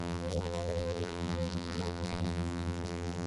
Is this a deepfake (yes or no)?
yes